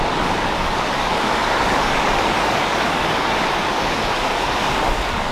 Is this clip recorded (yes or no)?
no